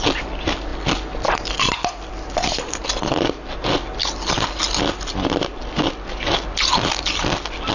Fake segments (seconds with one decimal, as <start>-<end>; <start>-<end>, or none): none